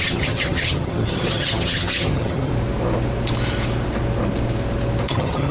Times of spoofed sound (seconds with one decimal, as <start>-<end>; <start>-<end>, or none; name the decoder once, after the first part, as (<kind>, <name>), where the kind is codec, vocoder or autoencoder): 0.0-2.5 (vocoder, HiFi-GAN); 5.1-5.5